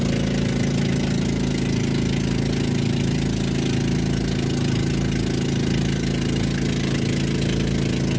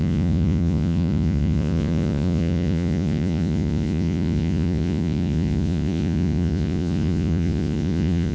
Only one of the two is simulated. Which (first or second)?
second